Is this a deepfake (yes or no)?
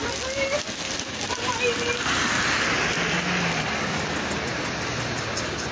no